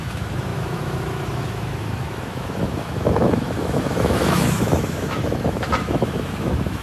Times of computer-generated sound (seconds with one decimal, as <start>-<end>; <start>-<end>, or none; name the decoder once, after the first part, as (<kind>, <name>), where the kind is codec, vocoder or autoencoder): 0.0-6.8 (autoencoder, DAC-VAE)

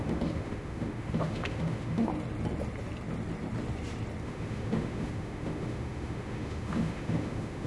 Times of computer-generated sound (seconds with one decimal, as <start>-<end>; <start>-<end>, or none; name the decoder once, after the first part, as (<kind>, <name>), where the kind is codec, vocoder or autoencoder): 0.0-2.1 (autoencoder, DAC-VAE); 4.2-7.7

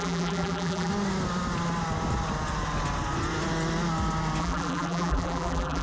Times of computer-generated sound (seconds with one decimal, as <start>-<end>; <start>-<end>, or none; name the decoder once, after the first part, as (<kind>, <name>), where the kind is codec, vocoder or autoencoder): 0.0-0.9 (vocoder, BigVGAN v2); 4.4-5.8

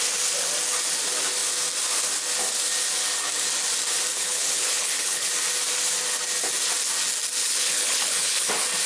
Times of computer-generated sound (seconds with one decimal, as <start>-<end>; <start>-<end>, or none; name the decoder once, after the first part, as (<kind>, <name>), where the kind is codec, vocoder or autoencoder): 4.1-5.3 (codec, HILCodec); 7.4-8.5

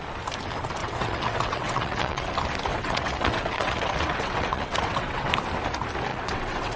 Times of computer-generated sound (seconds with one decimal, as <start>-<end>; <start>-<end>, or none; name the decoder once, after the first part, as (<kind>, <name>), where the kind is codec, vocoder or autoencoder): 0.8-2.3 (vocoder, WaveNeXt); 2.7-5.3; 6.1-6.8

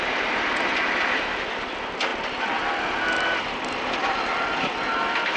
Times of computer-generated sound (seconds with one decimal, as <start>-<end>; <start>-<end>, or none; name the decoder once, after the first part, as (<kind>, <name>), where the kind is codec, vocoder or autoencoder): none

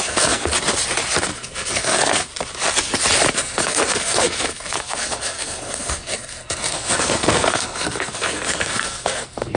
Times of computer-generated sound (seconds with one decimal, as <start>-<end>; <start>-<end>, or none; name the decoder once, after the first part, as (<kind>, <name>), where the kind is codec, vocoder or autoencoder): 0.0-0.5 (codec, SNAC); 1.2-2.3; 3.3-9.6

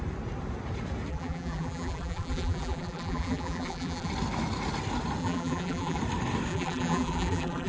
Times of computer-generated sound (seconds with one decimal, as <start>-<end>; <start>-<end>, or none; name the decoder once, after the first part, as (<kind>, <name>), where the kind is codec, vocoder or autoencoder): 1.1-4.1 (vocoder, BigVGAN v2); 5.2-6.0; 6.5-7.7